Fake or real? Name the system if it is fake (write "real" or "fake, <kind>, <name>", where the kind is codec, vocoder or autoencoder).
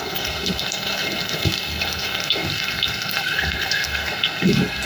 fake, codec, SNAC